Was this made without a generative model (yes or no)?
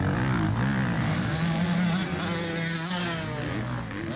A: yes